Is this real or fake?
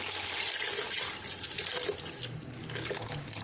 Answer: real